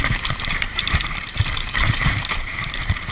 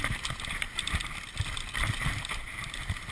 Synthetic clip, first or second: first